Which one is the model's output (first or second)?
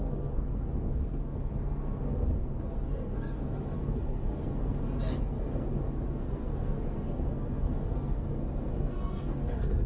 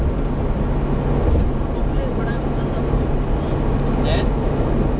first